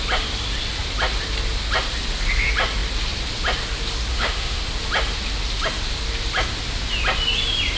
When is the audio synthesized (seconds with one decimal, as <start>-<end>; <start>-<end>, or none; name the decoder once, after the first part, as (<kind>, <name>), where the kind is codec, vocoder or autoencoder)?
4.1-4.6 (autoencoder, DAC-VAE)